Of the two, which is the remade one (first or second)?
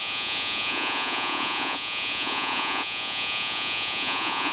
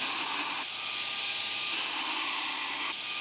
first